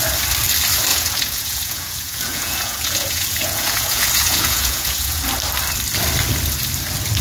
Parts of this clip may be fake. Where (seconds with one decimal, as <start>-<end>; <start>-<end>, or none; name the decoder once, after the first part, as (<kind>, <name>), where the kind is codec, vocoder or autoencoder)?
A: 0.9-5.2 (vocoder, Vocos)